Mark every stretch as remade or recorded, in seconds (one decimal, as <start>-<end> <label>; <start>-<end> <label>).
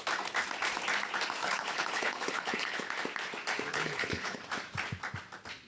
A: 0.0-1.4 recorded; 1.4-2.9 remade; 2.9-3.7 recorded; 3.7-4.4 remade; 4.4-5.7 recorded